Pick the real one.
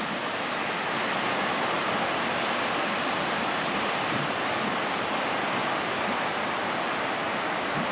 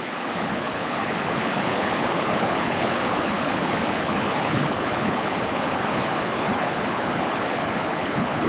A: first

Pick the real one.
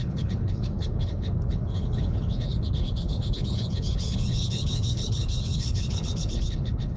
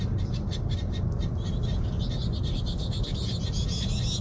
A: second